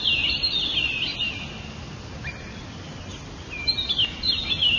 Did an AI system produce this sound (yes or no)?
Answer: no